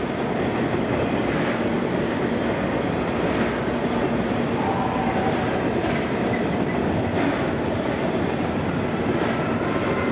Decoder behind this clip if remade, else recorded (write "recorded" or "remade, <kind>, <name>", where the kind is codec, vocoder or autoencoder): recorded